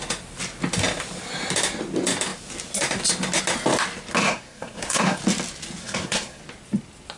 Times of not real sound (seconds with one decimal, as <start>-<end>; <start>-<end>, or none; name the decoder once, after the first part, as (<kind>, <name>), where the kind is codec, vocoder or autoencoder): 4.2-5.2 (codec, SNAC); 5.8-6.4